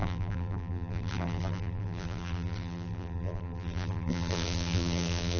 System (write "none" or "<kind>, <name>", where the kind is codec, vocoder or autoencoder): vocoder, BigVGAN v2